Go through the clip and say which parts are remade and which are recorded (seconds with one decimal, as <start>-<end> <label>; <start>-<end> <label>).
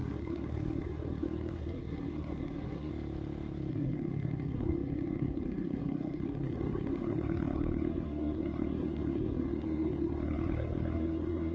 0.0-2.9 remade; 2.9-3.7 recorded; 3.7-11.5 remade